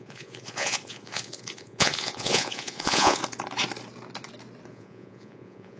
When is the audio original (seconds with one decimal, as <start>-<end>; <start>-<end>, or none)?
3.2-4.7